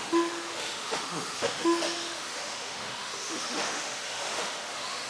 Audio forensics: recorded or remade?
remade